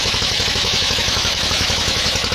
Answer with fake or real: fake